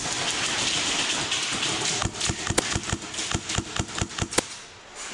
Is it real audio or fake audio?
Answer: real